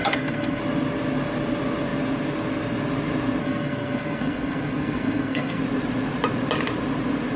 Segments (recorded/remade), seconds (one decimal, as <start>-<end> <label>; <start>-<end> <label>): 0.0-0.6 remade; 0.6-3.4 recorded; 3.4-5.6 remade; 5.6-7.4 recorded